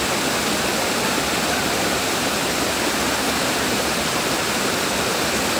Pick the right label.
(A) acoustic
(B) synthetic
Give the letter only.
A